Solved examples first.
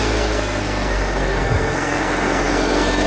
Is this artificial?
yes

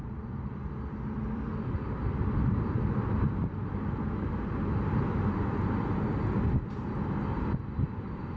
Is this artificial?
no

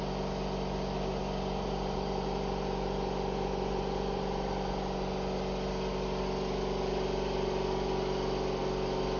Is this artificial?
no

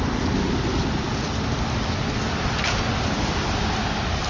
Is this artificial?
no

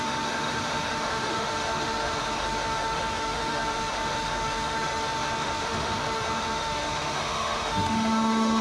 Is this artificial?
yes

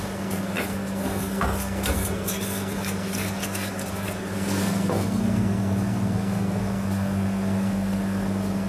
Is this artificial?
yes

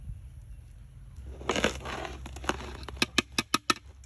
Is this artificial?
no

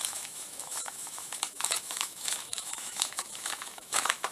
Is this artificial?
yes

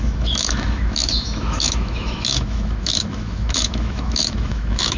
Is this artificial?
yes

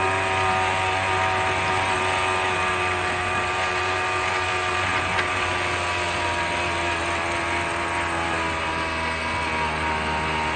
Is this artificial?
no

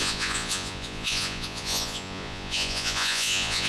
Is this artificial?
yes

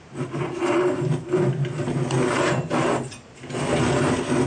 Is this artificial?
no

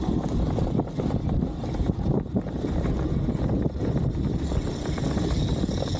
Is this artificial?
no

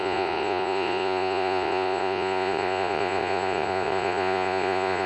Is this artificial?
yes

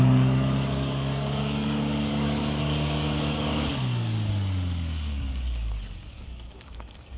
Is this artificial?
yes